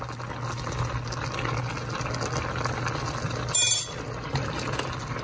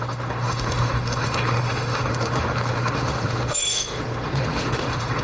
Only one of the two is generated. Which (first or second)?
second